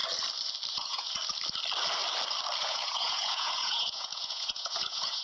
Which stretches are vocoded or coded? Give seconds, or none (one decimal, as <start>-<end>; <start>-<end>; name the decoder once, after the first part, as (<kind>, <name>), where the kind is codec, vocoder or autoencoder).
0.7-1.2 (vocoder, Vocos); 2.6-5.2